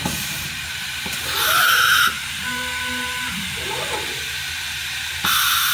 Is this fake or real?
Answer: fake